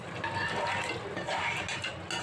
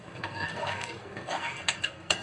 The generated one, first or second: second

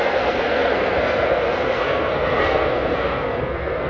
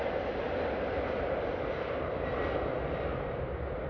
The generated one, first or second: first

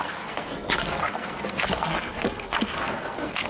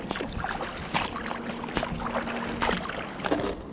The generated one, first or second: first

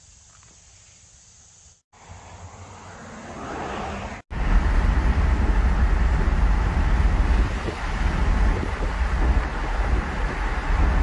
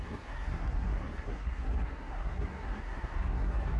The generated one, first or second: second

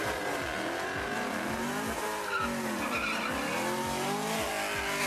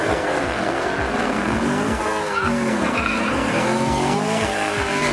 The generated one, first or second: second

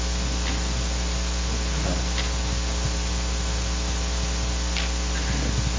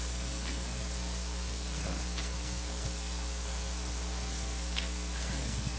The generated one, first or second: second